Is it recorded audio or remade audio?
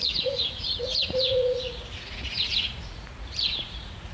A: remade